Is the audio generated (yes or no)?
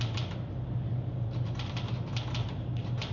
no